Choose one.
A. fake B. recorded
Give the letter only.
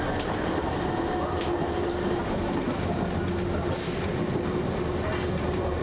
B